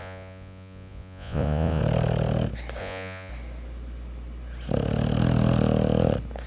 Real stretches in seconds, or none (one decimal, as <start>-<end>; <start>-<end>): 1.8-2.8; 3.3-6.5